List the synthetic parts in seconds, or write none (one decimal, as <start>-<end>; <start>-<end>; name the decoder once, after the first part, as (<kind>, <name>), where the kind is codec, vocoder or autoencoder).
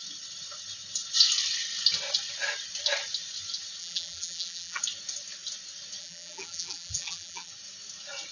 3.8-4.8 (vocoder, BigVGAN v2); 6.0-7.5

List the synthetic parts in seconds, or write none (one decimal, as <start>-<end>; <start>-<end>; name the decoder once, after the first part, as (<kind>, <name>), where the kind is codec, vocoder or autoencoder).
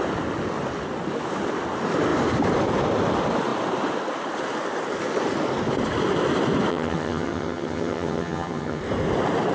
6.7-8.8 (vocoder, HiFi-GAN)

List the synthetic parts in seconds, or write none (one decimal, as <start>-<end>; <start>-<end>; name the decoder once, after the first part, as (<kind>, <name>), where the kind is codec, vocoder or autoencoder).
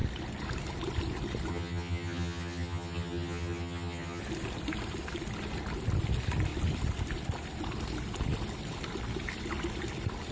1.5-4.2 (vocoder, HiFi-GAN)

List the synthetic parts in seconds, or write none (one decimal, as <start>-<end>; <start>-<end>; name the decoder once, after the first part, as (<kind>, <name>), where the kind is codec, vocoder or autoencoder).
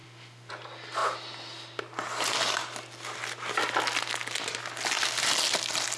0.0-0.5 (autoencoder, DAC-VAE)